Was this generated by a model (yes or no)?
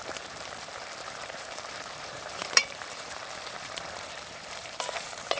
yes